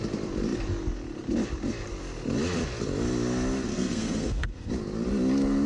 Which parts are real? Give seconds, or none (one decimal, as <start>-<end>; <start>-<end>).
0.0-3.7; 4.7-5.7